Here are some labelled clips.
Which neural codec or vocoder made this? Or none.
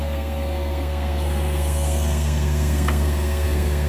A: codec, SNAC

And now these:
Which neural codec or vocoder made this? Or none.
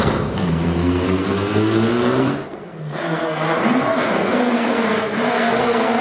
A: codec, SNAC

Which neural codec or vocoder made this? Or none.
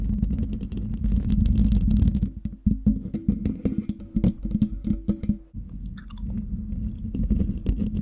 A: none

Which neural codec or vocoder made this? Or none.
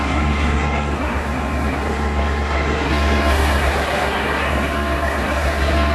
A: codec, SNAC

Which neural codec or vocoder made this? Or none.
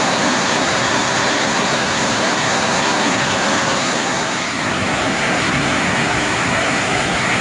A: codec, SNAC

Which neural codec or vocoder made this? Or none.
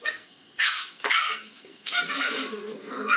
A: codec, SNAC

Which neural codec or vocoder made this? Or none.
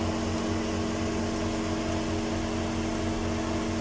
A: none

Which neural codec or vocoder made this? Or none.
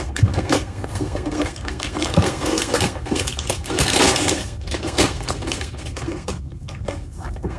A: codec, SNAC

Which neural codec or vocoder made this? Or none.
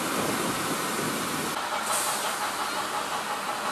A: none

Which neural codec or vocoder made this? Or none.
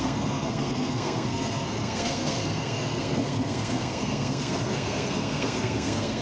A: codec, SNAC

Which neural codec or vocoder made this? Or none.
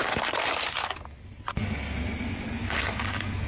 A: none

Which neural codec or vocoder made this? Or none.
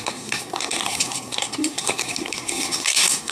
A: codec, SNAC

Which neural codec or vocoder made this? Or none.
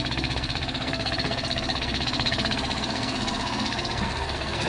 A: codec, SNAC